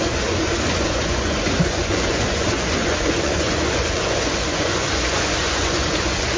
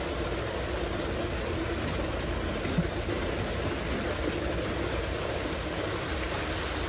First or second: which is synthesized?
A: first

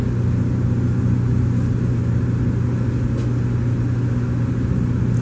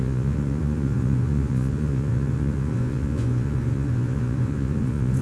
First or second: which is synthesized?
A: second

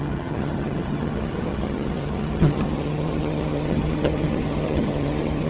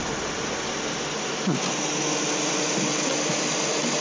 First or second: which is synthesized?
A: first